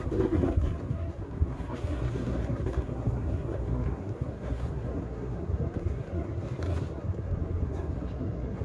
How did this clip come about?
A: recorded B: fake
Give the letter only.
B